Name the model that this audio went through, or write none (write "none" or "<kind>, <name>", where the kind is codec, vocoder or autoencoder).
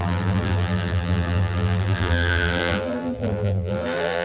vocoder, BigVGAN v2